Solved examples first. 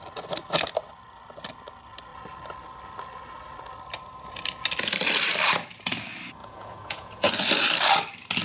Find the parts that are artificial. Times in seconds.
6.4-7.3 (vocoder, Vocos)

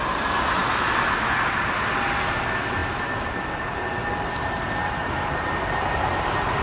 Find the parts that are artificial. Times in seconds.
none

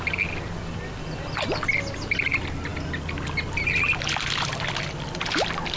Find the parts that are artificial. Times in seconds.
none

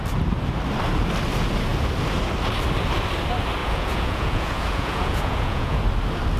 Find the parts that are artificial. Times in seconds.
3.6-5.8 (vocoder, Vocos)